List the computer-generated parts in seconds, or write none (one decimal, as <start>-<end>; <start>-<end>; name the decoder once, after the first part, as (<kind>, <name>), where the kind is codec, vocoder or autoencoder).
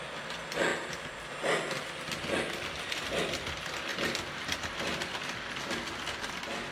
none